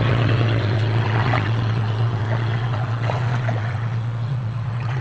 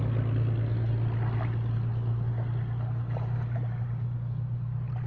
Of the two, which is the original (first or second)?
second